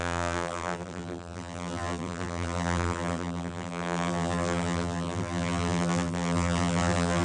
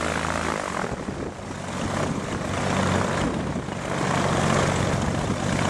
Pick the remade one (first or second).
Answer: first